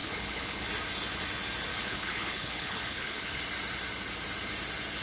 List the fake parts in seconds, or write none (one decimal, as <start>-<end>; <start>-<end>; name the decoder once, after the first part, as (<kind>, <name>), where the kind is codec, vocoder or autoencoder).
0.0-0.6 (codec, HILCodec); 1.7-3.4